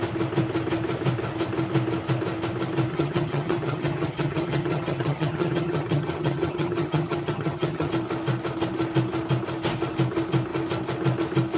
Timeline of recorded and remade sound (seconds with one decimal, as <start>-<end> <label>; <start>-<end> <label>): 0.0-2.9 recorded; 2.9-7.9 remade; 7.9-11.6 recorded